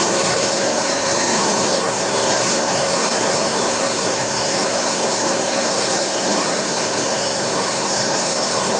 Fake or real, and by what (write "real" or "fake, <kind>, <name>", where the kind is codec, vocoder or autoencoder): fake, codec, SNAC